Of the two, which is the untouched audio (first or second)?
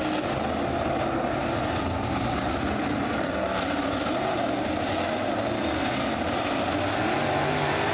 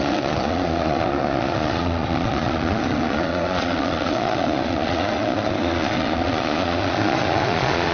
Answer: first